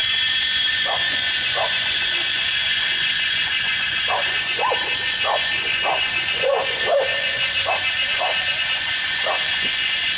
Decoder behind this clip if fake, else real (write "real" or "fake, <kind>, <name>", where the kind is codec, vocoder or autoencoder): fake, vocoder, Vocos